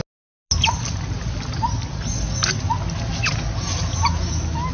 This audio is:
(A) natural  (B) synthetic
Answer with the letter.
A